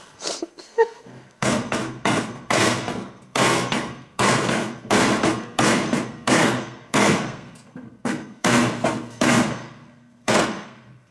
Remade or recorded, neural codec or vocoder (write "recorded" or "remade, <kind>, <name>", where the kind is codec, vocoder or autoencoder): remade, codec, SNAC